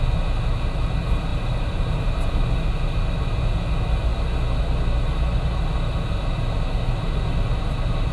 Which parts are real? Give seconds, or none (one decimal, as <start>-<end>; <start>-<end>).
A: 0.0-1.3; 2.3-8.1